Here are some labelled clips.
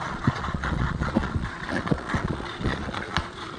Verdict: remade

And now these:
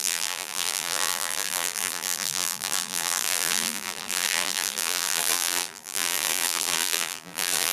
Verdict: remade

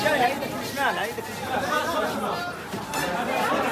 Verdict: recorded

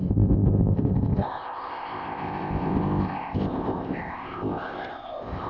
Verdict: remade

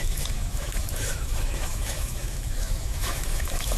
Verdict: remade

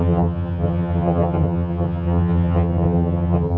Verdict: remade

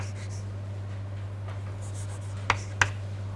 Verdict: recorded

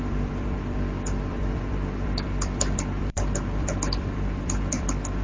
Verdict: remade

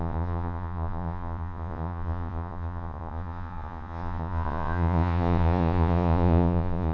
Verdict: remade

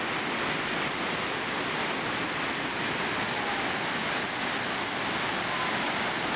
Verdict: recorded